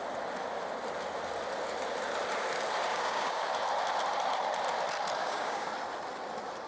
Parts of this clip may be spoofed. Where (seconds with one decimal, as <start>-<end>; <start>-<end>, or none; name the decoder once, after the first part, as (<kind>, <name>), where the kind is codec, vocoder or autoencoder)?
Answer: 2.9-3.5 (codec, DAC); 5.2-5.7